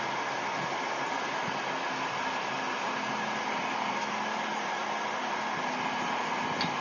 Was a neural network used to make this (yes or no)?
no